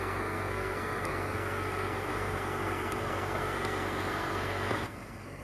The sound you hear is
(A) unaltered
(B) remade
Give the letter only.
B